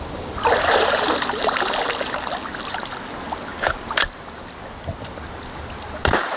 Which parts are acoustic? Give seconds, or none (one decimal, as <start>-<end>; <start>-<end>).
0.0-6.4